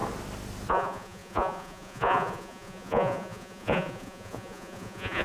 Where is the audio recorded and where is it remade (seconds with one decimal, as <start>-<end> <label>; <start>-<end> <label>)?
0.0-0.7 recorded; 0.7-5.2 remade